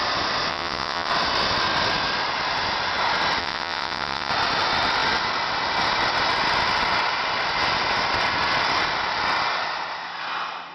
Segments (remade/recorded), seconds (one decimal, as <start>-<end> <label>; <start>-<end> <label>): 0.0-0.5 recorded; 0.5-1.1 remade; 1.1-3.4 recorded; 3.4-4.3 remade; 4.3-10.7 recorded